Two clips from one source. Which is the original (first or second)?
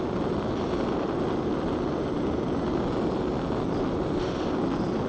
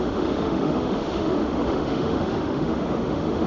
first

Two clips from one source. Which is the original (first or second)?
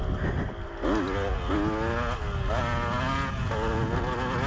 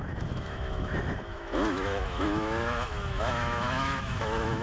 first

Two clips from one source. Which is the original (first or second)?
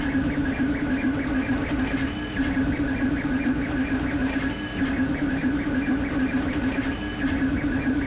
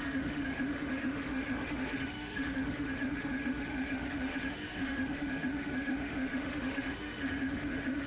first